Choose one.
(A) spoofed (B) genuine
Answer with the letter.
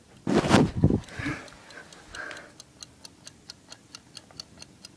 B